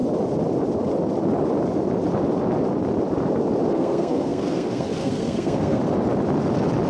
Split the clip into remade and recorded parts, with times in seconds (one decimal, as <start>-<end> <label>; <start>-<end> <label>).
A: 0.0-3.7 recorded; 3.7-5.8 remade; 5.8-6.9 recorded